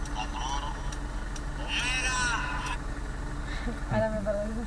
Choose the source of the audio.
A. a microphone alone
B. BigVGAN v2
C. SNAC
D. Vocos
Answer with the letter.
A